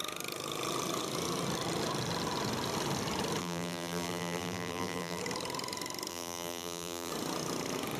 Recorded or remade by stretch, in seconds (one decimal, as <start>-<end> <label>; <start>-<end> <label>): 0.0-3.4 recorded; 3.4-5.2 remade; 5.2-6.1 recorded; 6.1-7.1 remade; 7.1-8.0 recorded